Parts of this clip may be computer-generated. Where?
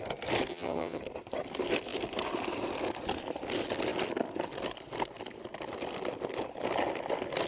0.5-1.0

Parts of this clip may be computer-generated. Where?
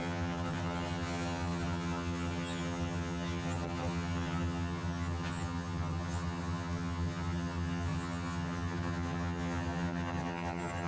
0.0-10.9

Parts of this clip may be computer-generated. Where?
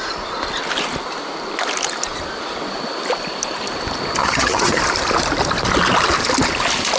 4.2-4.8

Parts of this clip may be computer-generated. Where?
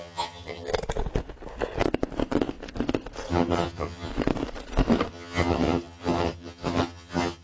0.0-0.7; 3.3-4.1; 5.1-7.4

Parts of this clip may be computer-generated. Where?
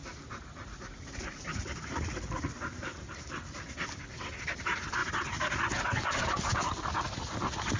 none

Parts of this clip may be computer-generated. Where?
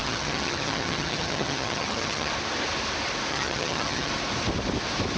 0.0-2.3; 3.3-4.1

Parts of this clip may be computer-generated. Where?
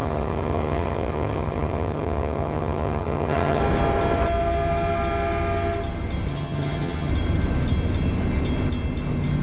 0.0-3.6; 6.3-7.1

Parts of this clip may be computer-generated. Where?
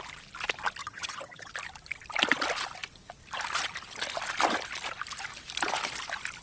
0.8-1.5